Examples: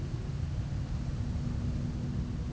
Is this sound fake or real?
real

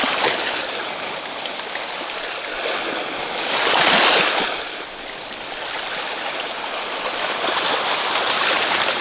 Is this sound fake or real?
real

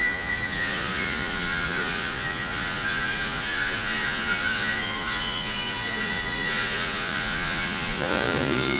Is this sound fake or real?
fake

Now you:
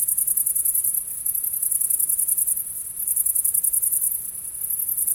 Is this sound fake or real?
real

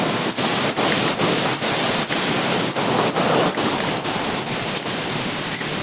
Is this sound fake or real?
real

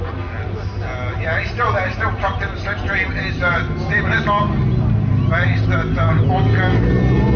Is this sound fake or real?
real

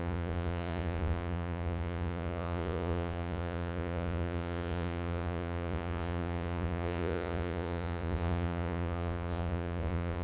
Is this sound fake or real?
fake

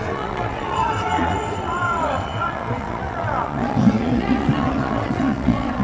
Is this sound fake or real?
fake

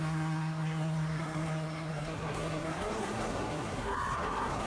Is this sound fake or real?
fake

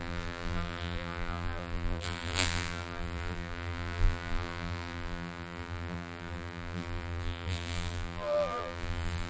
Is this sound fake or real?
fake